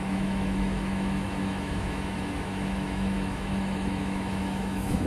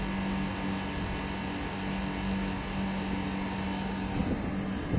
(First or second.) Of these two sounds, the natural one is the second